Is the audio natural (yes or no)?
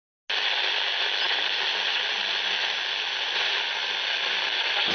yes